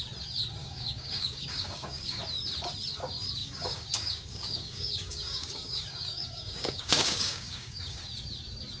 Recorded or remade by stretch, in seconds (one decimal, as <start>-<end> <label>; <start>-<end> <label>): 0.0-0.6 recorded; 0.6-2.2 remade; 2.2-3.4 recorded; 3.4-8.0 remade; 8.0-8.8 recorded